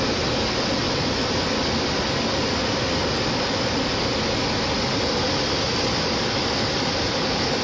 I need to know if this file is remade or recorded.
recorded